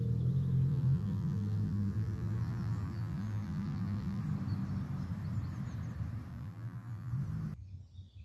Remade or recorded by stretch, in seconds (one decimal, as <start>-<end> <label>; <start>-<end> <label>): 0.0-0.7 recorded; 0.7-4.2 remade; 4.2-6.3 recorded; 6.3-7.1 remade; 7.1-8.2 recorded